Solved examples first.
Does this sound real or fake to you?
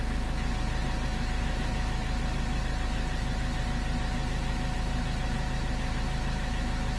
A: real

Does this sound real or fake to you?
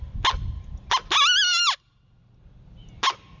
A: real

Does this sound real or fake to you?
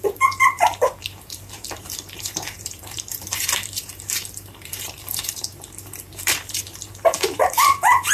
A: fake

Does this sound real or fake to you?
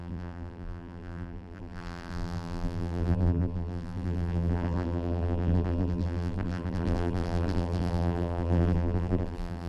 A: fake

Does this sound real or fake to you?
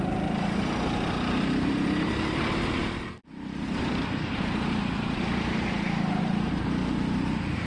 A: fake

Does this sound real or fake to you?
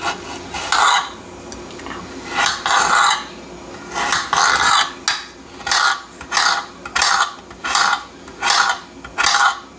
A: real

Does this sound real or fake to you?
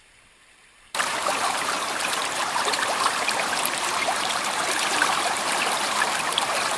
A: fake